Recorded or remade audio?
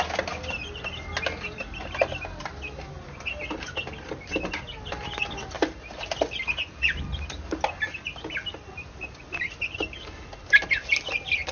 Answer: recorded